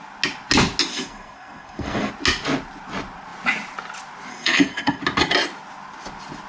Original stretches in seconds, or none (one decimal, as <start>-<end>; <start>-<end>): 0.0-0.9; 2.1-4.3; 5.0-6.5